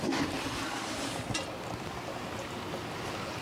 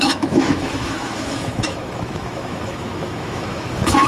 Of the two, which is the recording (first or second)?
first